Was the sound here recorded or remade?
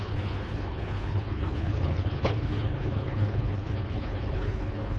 remade